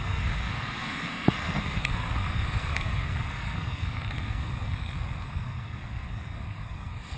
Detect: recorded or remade remade